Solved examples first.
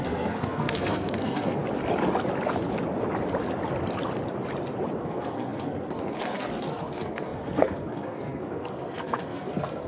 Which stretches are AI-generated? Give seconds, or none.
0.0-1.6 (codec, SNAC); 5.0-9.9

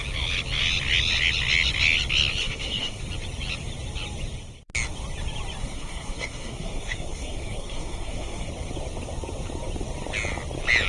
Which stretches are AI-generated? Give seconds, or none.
2.4-3.0 (codec, SNAC); 5.6-8.5

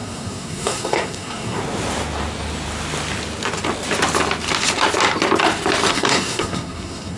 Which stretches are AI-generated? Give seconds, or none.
0.0-1.6 (codec, SNAC); 5.9-7.2

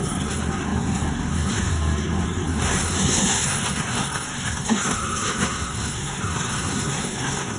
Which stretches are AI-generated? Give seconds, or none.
0.0-7.6 (codec, SNAC)